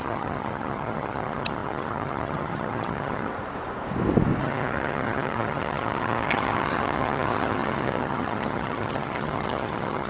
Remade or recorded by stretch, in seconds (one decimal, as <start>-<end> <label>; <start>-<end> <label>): 0.0-3.3 remade; 3.3-4.4 recorded; 4.4-10.1 remade